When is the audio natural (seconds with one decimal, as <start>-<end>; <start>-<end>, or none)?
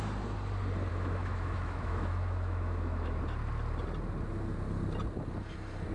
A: 0.0-0.9; 3.2-5.9